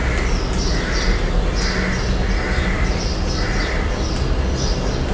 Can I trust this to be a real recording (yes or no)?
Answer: yes